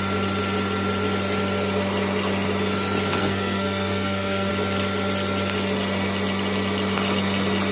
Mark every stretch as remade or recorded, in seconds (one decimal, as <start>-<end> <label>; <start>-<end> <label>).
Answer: 0.0-3.2 recorded; 3.2-4.5 remade; 4.5-7.7 recorded